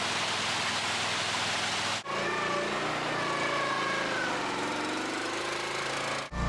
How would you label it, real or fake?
real